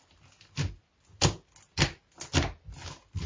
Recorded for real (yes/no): yes